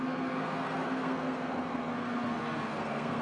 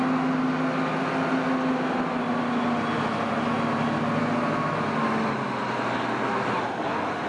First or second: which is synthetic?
first